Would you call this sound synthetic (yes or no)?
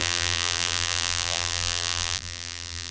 yes